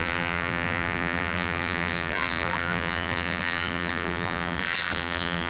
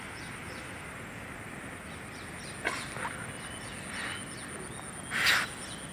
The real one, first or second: second